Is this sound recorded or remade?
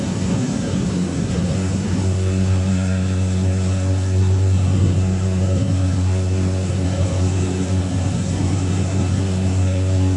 remade